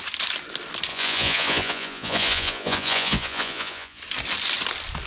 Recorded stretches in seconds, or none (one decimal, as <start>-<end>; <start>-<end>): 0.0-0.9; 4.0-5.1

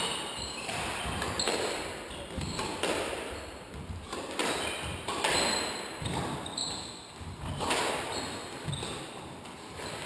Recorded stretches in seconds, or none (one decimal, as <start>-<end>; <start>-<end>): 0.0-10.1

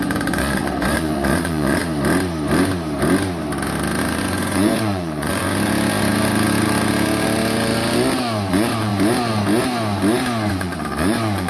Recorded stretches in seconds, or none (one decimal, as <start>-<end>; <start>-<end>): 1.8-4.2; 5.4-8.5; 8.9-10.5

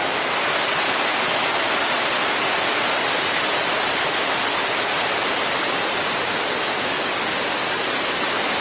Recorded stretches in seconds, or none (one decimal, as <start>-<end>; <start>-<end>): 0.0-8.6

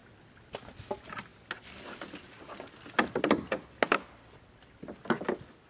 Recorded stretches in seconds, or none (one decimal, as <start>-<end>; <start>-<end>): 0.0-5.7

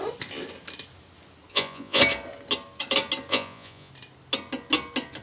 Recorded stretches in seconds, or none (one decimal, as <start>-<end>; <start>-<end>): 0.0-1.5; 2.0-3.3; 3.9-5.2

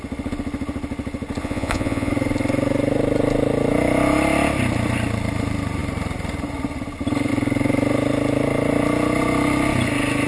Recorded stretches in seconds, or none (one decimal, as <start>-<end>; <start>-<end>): 0.0-1.4; 2.1-10.3